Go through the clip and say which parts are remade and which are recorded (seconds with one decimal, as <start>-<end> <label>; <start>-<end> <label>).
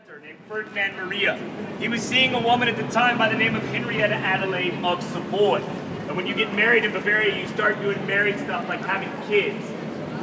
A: 0.0-10.2 recorded